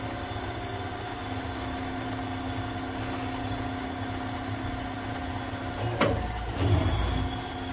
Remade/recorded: recorded